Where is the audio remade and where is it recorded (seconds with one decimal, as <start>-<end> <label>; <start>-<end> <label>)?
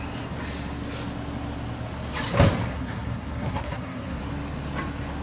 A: 0.0-2.7 recorded; 2.7-4.2 remade; 4.2-5.2 recorded